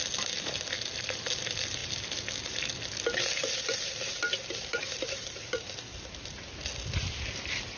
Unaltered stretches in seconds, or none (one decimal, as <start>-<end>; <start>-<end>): 0.0-7.8